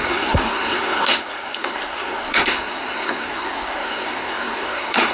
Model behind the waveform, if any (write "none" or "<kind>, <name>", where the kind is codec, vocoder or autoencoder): codec, SNAC